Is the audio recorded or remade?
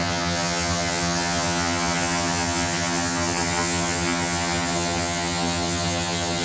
remade